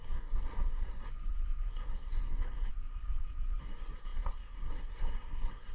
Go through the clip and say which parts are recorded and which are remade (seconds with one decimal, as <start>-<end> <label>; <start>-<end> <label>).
0.0-1.1 remade; 1.1-1.7 recorded; 1.7-2.7 remade; 2.7-3.6 recorded; 3.6-5.7 remade